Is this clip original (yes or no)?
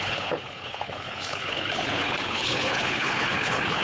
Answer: no